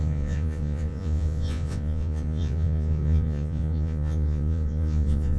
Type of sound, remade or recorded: remade